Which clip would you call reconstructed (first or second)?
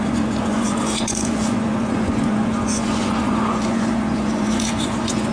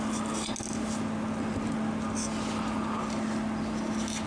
first